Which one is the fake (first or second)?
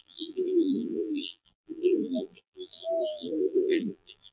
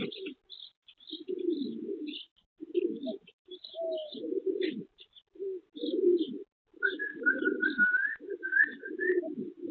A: first